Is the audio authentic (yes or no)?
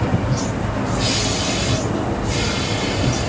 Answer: yes